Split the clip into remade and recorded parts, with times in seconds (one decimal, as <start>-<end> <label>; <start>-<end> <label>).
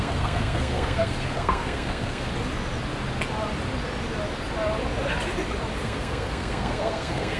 0.0-2.3 remade; 2.3-5.8 recorded; 5.8-7.4 remade